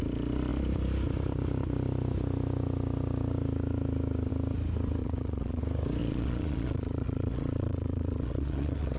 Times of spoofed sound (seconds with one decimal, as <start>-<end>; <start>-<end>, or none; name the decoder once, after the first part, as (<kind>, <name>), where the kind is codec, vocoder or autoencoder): 5.0-5.6 (vocoder, Vocos); 6.0-9.0